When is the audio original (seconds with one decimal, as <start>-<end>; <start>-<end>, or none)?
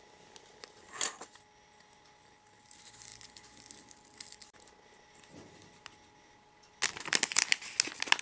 0.0-8.2